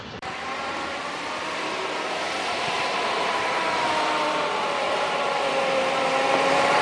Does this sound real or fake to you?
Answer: fake